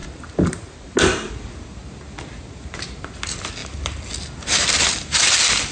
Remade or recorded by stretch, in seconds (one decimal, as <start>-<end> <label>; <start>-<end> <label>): 0.0-5.7 recorded